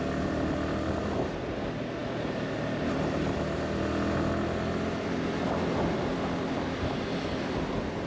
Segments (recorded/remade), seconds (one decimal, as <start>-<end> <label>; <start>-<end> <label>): 0.0-8.1 recorded